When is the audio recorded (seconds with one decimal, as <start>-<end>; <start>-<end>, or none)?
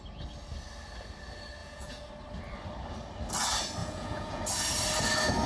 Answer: 0.0-1.6; 2.1-3.8; 4.4-5.5